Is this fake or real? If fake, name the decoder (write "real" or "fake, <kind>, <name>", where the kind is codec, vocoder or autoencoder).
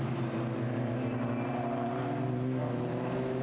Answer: real